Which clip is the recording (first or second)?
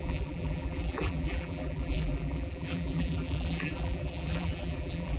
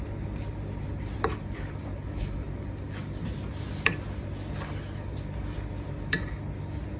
second